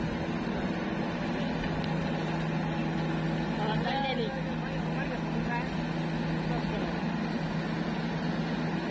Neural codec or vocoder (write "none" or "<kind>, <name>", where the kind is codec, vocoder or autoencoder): none